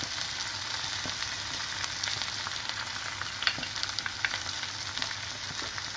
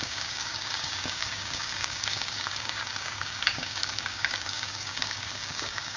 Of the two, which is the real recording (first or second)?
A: first